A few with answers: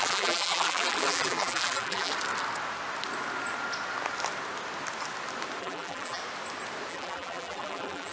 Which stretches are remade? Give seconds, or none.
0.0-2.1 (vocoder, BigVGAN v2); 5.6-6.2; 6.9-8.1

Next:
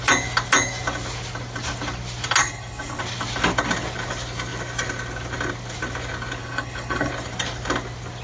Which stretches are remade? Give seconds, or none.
2.4-3.0 (codec, HILCodec); 6.4-7.1